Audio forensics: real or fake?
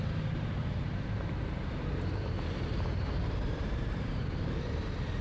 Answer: fake